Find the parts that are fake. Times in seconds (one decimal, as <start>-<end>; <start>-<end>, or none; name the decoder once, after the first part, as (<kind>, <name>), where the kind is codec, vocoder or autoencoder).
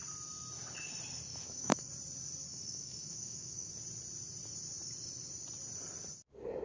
1.3-1.9 (autoencoder, DAC-VAE); 2.5-3.7